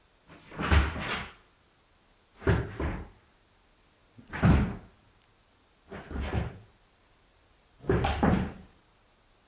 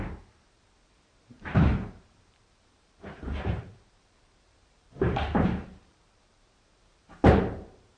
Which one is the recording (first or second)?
first